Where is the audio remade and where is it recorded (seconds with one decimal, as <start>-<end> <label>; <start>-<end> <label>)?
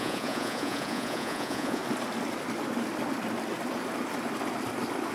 0.0-1.8 remade; 1.8-5.1 recorded